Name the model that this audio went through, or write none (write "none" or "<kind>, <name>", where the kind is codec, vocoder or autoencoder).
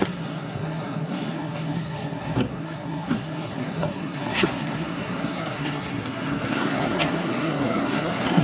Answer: codec, SNAC